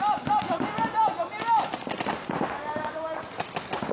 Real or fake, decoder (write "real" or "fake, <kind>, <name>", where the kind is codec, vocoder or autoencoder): real